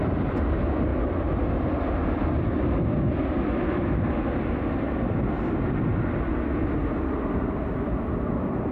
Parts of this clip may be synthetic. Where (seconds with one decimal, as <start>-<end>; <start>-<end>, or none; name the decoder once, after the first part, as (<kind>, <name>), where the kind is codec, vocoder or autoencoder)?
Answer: none